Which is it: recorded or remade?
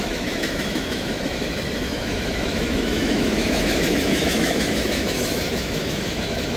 remade